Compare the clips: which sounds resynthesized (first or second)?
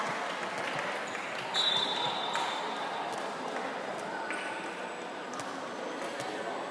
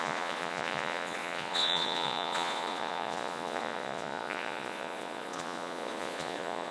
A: second